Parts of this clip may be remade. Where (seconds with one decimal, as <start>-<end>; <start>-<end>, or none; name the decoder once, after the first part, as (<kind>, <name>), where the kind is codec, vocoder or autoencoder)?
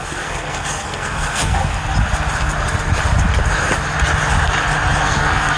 0.0-1.6 (codec, SNAC); 5.0-5.6